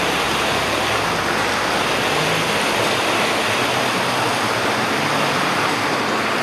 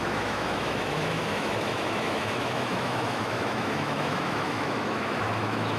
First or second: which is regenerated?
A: second